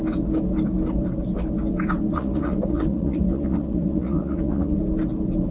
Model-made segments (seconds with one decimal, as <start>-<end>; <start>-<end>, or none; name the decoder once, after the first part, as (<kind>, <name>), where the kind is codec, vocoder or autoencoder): 2.1-4.8 (vocoder, Vocos)